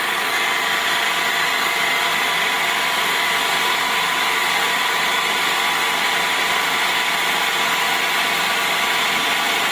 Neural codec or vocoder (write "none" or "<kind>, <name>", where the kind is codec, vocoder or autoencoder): none